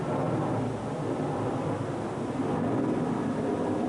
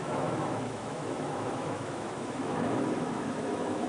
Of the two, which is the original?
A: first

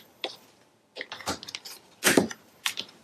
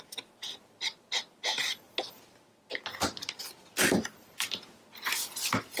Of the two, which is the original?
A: second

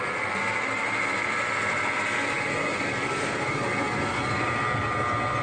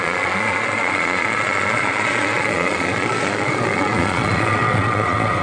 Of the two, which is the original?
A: first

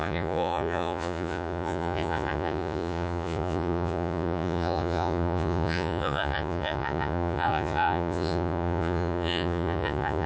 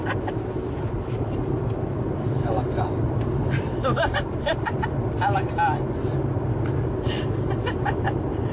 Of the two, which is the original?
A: second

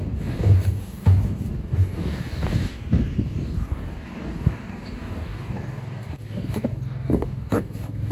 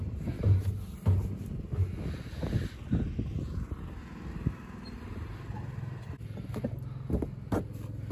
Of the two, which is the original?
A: second